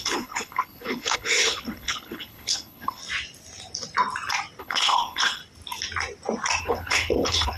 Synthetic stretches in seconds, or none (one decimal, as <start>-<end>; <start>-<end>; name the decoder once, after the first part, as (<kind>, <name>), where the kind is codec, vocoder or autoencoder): 0.0-3.0 (codec, HILCodec); 4.6-5.4; 6.6-7.6